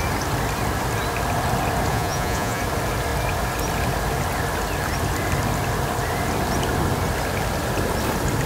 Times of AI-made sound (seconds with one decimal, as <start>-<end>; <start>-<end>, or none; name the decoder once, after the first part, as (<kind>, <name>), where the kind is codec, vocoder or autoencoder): 1.9-2.6 (vocoder, Vocos)